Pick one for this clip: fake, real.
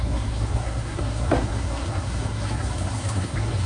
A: fake